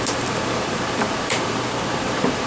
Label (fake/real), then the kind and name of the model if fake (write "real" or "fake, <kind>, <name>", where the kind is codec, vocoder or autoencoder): fake, vocoder, BigVGAN v2